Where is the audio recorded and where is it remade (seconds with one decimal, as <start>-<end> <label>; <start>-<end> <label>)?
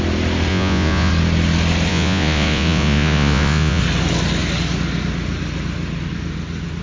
0.0-0.5 recorded; 0.5-1.1 remade; 1.1-1.9 recorded; 1.9-3.8 remade; 3.8-6.8 recorded